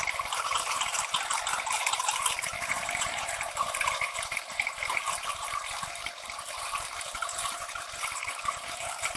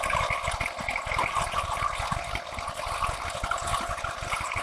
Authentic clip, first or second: second